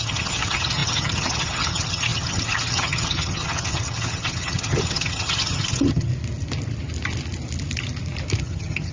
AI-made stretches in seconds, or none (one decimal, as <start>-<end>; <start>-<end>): 0.0-6.1; 8.4-8.9